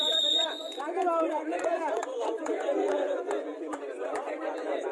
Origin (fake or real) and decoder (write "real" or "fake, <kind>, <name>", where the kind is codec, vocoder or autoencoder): fake, vocoder, Vocos